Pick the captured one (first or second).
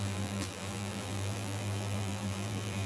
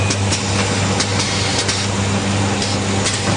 second